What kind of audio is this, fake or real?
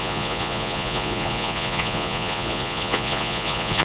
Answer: fake